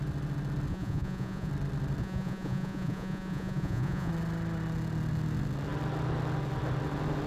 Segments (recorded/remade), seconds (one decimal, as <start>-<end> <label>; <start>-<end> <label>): 0.0-0.7 recorded; 0.7-1.5 remade; 1.5-2.0 recorded; 2.0-4.1 remade; 4.1-7.3 recorded